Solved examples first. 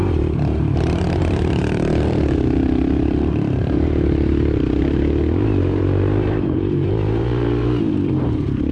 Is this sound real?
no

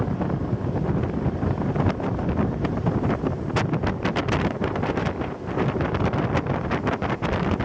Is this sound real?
no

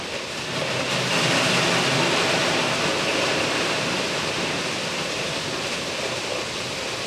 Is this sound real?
yes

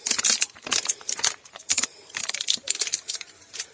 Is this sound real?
no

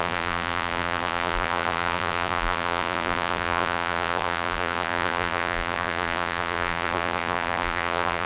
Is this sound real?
no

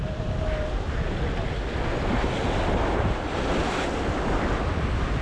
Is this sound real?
yes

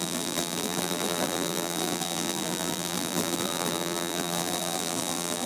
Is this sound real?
no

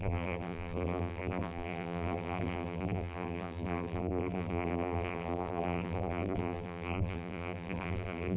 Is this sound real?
no